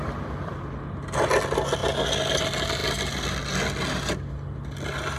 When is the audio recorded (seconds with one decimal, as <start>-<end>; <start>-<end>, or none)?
0.0-5.2